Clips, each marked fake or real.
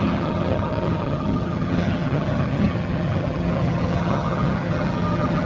fake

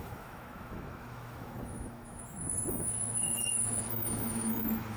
fake